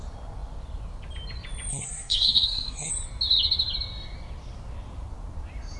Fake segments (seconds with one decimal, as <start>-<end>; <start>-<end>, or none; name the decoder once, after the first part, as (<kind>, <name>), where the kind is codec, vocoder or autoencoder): 1.7-2.9 (codec, SNAC)